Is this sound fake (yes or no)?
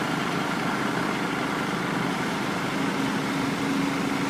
no